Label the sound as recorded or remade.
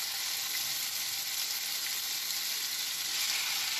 recorded